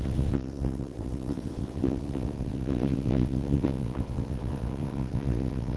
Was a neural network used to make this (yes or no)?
yes